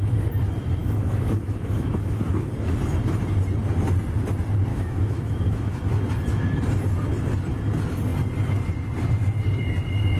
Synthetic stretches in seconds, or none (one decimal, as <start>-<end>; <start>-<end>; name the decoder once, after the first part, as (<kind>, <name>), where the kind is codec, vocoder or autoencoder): 0.8-2.5 (autoencoder, DAC-VAE); 4.7-5.8